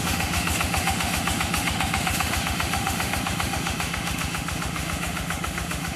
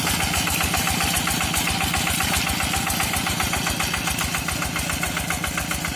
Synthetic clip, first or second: first